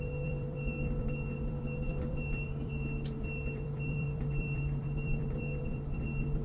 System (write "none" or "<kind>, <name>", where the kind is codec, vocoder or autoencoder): vocoder, BigVGAN v2